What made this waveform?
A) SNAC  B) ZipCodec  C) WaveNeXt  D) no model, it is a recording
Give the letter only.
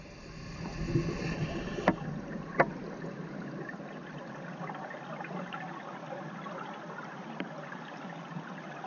D